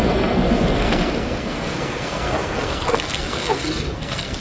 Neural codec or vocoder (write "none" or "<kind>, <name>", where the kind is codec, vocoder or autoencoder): codec, SNAC